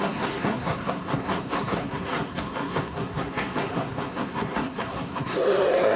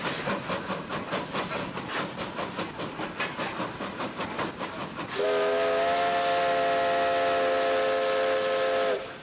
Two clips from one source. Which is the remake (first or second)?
first